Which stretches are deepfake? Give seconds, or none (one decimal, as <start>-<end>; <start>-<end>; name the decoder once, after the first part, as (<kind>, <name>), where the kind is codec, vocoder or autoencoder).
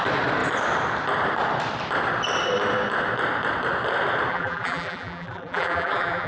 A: 4.3-6.3 (vocoder, BigVGAN v2)